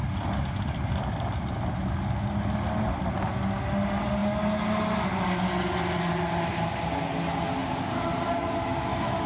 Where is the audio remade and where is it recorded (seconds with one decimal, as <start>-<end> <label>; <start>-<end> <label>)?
0.0-7.6 recorded; 7.6-8.5 remade; 8.5-9.3 recorded